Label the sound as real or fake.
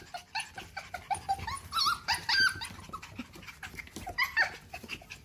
real